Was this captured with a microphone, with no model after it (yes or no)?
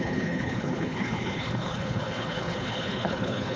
no